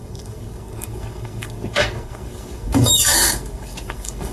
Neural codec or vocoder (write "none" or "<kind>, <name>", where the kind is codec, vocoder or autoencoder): codec, SNAC